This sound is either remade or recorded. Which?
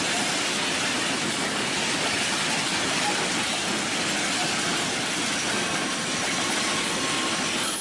recorded